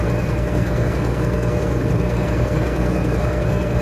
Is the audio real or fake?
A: fake